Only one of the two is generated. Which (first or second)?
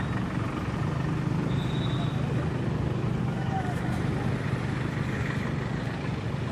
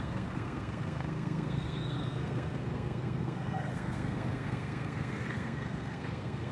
second